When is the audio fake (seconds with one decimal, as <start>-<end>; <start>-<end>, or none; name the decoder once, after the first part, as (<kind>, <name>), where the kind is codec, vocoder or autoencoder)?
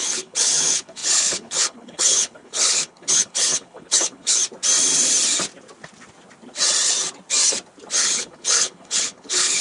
0.0-4.4 (codec, HILCodec); 8.0-9.6